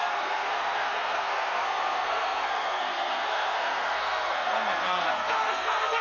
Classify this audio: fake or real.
fake